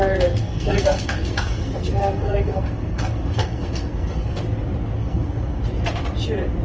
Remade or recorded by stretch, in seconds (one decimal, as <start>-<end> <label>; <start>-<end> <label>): 0.0-0.4 recorded; 0.4-4.4 remade; 4.4-5.0 recorded; 5.0-5.6 remade; 5.6-6.6 recorded

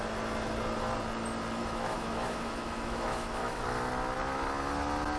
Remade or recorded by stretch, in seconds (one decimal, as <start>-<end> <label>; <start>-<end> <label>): 0.0-1.6 recorded; 1.6-3.6 remade; 3.6-5.2 recorded